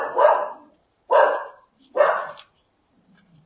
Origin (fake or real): fake